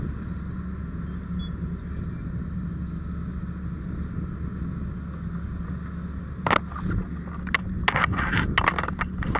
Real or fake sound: real